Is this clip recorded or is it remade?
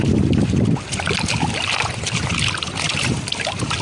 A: recorded